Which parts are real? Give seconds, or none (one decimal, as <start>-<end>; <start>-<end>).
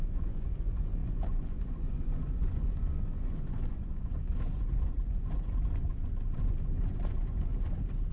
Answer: 7.5-8.1